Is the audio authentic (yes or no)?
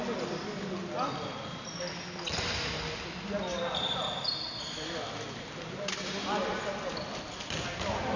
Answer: yes